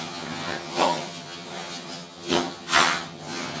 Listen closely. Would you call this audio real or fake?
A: fake